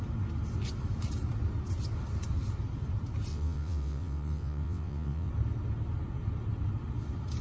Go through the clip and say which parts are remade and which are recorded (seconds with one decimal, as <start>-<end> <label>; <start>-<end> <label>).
0.0-3.3 recorded; 3.3-5.3 remade; 5.3-7.4 recorded